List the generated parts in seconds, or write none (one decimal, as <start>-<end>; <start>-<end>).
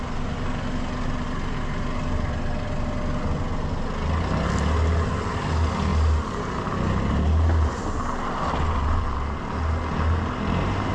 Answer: none